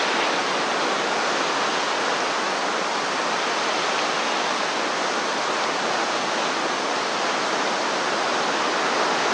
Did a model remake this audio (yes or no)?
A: no